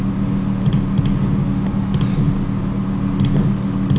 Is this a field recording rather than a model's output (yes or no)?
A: yes